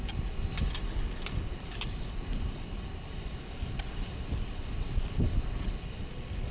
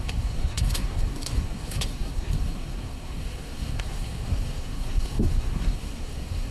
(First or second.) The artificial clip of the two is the second